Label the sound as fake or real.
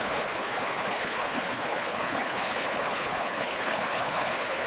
fake